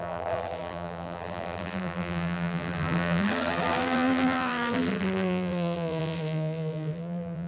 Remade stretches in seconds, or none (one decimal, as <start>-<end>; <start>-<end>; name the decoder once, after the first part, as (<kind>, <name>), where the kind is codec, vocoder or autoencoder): 0.0-7.5 (vocoder, BigVGAN v2)